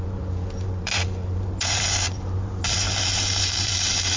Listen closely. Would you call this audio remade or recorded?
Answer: remade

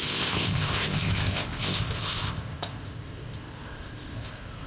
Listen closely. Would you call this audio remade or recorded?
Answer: remade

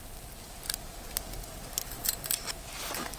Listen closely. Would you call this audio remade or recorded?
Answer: recorded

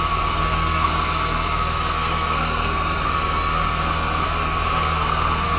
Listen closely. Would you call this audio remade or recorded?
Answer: remade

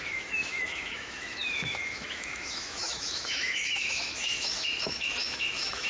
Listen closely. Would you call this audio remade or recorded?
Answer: remade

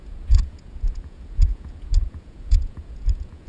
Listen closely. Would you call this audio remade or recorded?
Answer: remade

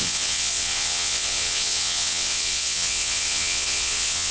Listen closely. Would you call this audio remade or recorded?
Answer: remade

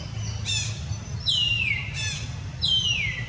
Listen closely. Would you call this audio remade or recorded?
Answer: recorded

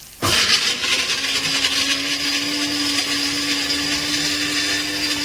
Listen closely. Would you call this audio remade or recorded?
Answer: recorded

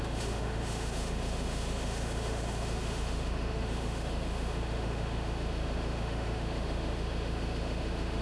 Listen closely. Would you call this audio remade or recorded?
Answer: remade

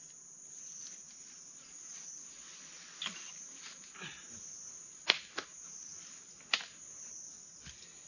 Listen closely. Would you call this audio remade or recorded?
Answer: recorded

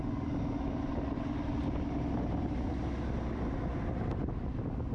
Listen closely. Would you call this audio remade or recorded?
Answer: recorded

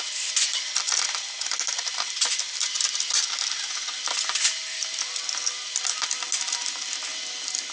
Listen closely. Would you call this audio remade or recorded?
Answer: recorded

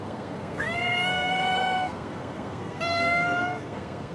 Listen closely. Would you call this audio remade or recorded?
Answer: remade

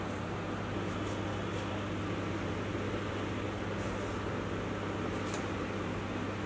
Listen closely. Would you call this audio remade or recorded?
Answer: recorded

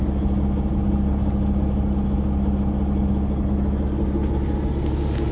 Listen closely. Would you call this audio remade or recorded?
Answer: recorded